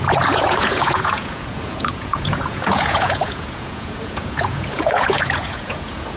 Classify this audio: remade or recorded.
remade